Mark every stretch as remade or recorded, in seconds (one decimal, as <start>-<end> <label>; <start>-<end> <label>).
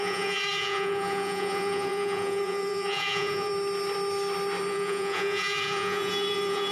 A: 0.0-3.5 remade; 3.5-4.7 recorded; 4.7-6.7 remade